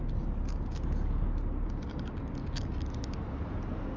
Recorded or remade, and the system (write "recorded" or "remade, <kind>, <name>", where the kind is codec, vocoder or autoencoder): recorded